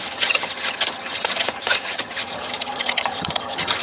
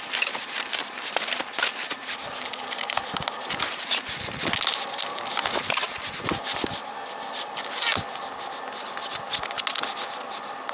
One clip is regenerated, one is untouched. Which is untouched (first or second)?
second